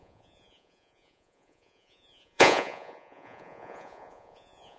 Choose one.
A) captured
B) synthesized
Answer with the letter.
B